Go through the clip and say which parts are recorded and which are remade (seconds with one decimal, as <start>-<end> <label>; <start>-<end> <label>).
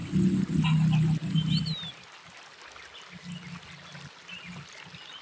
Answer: 0.0-5.2 recorded